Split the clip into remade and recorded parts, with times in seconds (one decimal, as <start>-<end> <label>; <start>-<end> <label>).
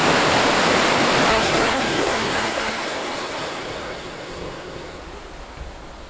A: 0.0-1.3 recorded; 1.3-5.0 remade; 5.0-6.1 recorded